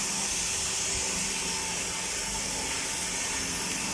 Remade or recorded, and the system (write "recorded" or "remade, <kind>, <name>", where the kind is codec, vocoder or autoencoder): recorded